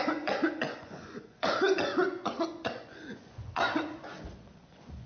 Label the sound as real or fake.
fake